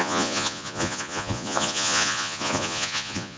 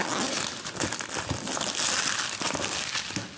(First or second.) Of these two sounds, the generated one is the first